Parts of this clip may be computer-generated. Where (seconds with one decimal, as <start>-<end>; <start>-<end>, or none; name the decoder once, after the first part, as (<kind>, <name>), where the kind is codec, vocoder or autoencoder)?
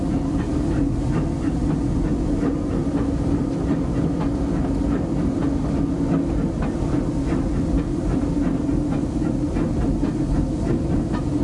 none